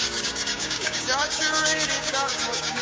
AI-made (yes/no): yes